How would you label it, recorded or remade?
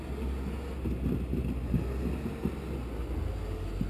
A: recorded